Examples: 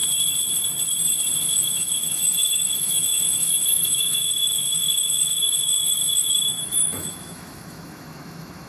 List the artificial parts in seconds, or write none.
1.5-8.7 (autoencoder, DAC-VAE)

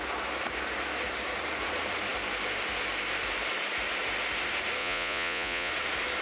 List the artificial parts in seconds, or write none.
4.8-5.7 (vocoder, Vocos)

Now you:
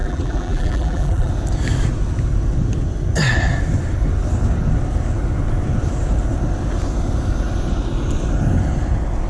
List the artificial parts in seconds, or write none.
0.0-1.3 (vocoder, BigVGAN v2)

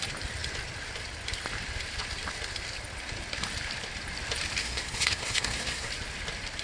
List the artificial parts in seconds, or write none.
4.6-5.9 (codec, SNAC)